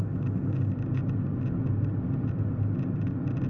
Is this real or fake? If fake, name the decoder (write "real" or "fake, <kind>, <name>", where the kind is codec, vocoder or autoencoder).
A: real